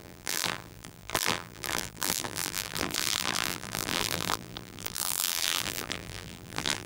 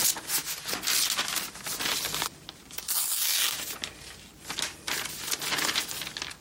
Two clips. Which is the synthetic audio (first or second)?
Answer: first